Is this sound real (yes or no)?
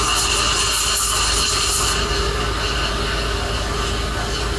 yes